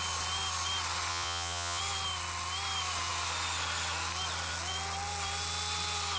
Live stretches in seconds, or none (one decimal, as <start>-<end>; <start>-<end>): 0.0-1.1; 1.8-6.2